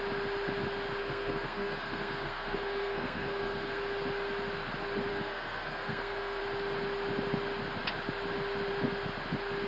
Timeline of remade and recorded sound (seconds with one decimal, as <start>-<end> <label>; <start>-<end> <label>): 0.0-1.0 recorded; 1.0-3.8 remade; 3.8-5.1 recorded; 5.1-6.4 remade; 6.4-9.7 recorded

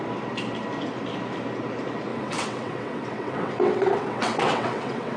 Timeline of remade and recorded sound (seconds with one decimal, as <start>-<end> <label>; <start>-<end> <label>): 0.0-2.1 recorded; 2.1-5.2 remade